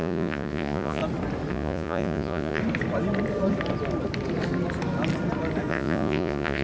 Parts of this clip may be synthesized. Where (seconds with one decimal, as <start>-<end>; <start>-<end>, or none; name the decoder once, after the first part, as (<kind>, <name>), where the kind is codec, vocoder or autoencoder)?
0.0-1.0 (vocoder, Vocos); 1.5-2.6; 5.7-6.6